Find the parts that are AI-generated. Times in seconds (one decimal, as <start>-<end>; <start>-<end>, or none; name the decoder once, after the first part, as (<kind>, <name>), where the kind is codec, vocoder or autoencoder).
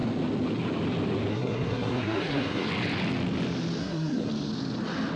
1.3-2.7 (codec, SNAC); 3.8-4.3